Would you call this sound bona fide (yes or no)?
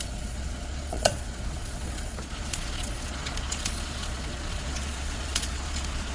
no